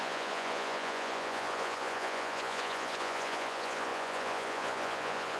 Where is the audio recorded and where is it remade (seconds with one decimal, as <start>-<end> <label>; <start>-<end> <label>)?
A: 0.0-5.4 remade